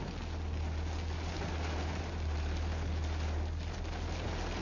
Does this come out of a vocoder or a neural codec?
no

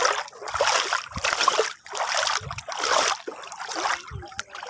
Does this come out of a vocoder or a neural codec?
no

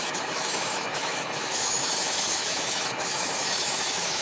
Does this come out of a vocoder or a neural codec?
yes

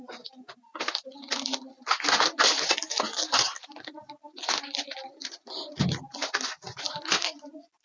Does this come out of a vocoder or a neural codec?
no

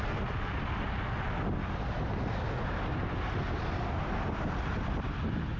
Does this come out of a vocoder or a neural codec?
no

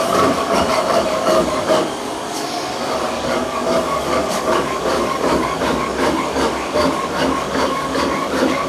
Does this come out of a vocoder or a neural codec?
yes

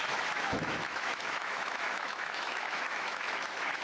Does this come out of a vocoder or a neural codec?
yes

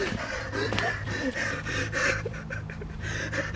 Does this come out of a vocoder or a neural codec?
yes